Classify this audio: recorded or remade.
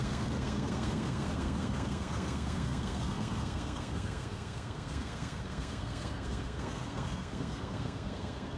remade